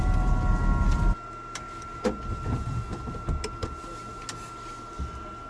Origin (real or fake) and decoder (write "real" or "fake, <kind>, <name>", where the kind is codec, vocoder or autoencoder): real